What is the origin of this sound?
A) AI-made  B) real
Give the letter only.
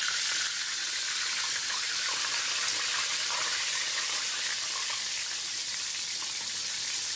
B